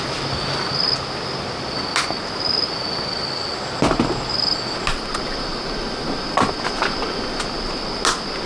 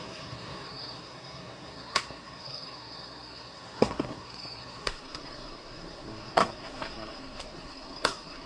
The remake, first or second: second